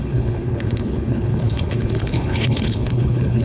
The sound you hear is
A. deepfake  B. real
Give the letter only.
A